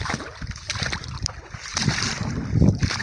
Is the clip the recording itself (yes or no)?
yes